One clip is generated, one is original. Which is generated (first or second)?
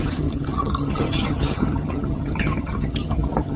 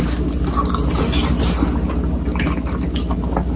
first